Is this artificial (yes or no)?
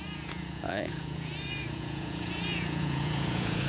yes